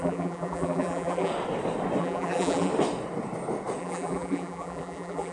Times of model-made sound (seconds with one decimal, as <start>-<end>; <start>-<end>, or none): 0.0-1.3; 2.0-2.7; 3.8-5.3